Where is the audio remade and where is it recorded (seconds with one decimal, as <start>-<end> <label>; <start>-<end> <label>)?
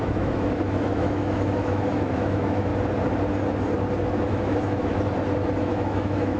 0.0-2.7 remade; 2.7-4.1 recorded; 4.1-4.9 remade; 4.9-5.6 recorded; 5.6-6.4 remade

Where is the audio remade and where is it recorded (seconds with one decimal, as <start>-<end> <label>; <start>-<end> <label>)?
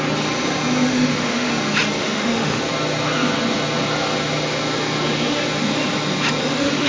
0.0-0.9 recorded; 0.9-1.5 remade; 1.5-2.0 recorded; 2.0-2.6 remade; 2.6-6.4 recorded; 6.4-6.9 remade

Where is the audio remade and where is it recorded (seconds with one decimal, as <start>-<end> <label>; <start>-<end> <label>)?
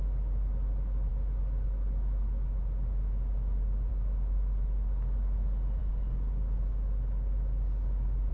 0.0-8.3 recorded